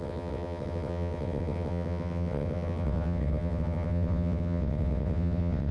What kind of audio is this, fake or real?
fake